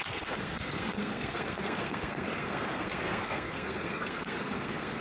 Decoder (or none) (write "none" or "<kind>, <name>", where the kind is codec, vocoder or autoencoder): codec, SNAC